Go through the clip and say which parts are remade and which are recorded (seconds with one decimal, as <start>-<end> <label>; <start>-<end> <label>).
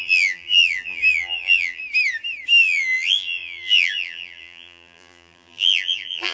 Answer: 0.0-1.8 remade; 1.8-2.6 recorded; 2.6-6.3 remade